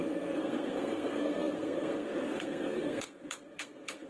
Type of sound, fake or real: fake